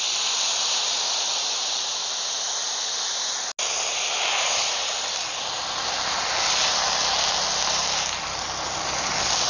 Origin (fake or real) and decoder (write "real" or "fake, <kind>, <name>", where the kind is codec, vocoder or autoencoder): real